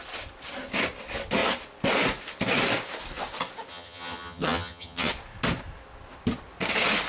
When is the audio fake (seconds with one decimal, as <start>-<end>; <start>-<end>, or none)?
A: 3.7-5.1